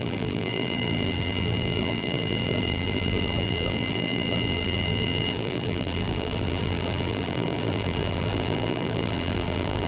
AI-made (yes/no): yes